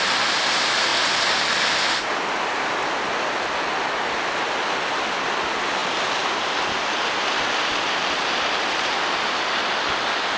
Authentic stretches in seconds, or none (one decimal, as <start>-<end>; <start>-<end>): 0.0-10.4